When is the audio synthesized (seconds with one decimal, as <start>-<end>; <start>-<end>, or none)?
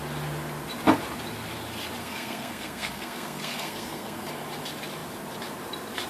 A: 2.0-4.3